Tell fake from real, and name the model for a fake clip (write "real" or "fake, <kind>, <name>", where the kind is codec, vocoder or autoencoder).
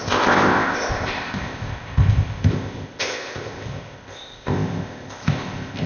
fake, codec, ZipCodec